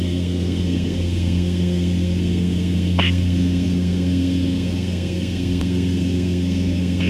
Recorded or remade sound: remade